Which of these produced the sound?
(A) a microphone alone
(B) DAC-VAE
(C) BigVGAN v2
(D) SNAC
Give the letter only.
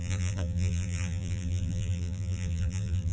C